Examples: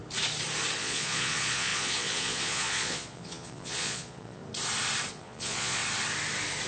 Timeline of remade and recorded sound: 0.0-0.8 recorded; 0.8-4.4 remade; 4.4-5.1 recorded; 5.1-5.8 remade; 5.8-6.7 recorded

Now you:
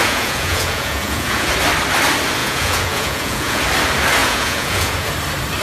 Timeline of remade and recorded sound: 0.0-1.5 remade; 1.5-2.4 recorded; 2.4-3.6 remade; 3.6-4.2 recorded; 4.2-5.1 remade; 5.1-5.6 recorded

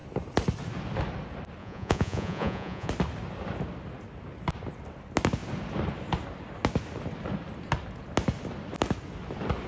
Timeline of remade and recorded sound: 0.0-1.6 recorded; 1.6-2.9 remade; 2.9-9.7 recorded

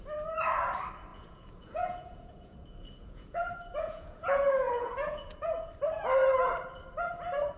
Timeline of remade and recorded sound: 0.0-1.1 recorded; 1.1-5.7 remade; 5.7-7.6 recorded

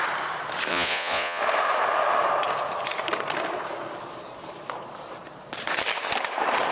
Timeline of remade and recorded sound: 0.0-0.7 recorded; 0.7-1.4 remade; 1.4-6.7 recorded

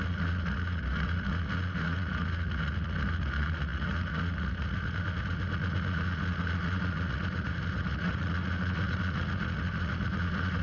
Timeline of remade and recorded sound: 0.0-10.6 remade